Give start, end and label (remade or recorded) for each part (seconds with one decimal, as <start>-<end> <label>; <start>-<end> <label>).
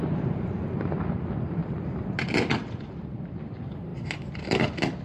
0.0-1.6 recorded; 1.6-3.3 remade; 3.3-5.0 recorded